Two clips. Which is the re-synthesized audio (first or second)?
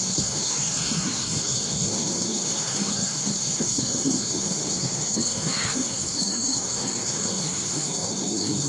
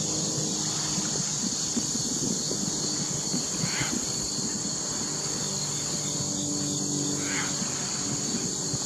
first